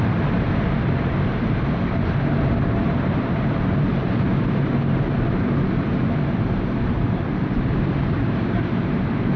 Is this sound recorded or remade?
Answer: remade